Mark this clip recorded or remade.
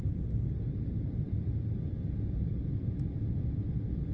recorded